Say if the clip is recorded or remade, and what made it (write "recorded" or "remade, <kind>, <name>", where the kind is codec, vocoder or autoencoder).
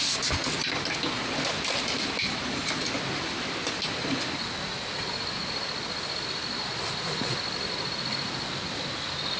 recorded